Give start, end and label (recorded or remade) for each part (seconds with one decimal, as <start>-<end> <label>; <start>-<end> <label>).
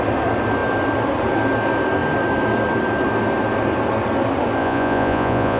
0.0-4.6 recorded; 4.6-5.6 remade